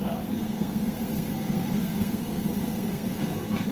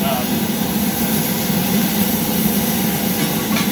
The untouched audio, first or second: second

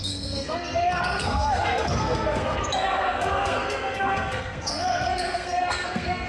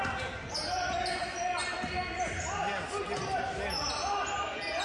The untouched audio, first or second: second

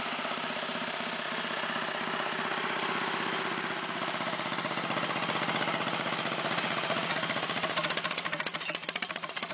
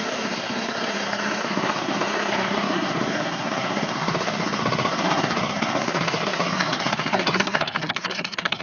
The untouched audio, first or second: first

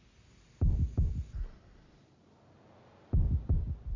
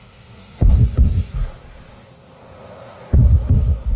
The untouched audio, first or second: first